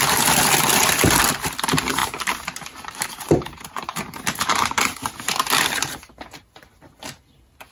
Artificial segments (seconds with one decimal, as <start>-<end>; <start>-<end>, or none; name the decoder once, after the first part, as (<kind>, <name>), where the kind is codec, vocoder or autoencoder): 2.0-5.1 (vocoder, BigVGAN v2)